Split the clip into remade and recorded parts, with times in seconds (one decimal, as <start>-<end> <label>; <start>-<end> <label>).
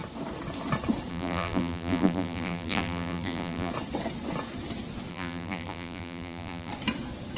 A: 0.0-1.1 recorded; 1.1-3.7 remade; 3.7-5.1 recorded; 5.1-6.7 remade; 6.7-7.4 recorded